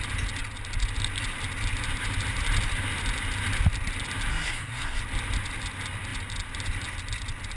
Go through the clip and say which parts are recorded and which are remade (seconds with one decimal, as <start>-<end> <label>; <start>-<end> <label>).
0.0-4.3 recorded; 4.3-5.0 remade; 5.0-7.6 recorded